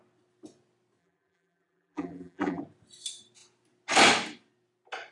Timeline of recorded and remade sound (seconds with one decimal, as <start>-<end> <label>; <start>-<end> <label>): 0.0-1.0 recorded; 1.0-2.6 remade; 2.6-5.1 recorded

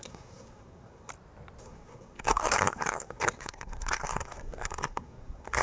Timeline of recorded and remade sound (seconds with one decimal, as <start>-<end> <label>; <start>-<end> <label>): 0.0-1.1 remade; 1.1-1.6 recorded; 1.6-5.6 remade

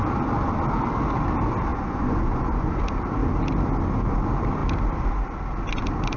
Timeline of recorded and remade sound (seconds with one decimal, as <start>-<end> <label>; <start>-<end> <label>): 0.0-1.7 recorded; 1.7-2.8 remade; 2.8-6.2 recorded

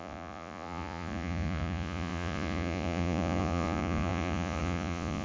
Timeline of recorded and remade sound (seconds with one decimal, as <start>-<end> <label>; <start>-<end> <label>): 0.0-5.2 remade

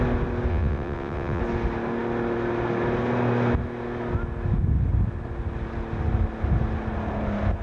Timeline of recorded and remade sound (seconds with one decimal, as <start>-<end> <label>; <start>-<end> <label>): 0.0-0.5 recorded; 0.5-1.4 remade; 1.4-7.6 recorded